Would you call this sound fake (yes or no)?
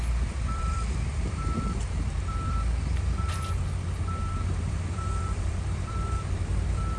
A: yes